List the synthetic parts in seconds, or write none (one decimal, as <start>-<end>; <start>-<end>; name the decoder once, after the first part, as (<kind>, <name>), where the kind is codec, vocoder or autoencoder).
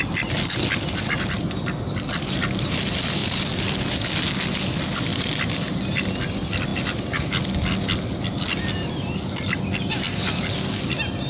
none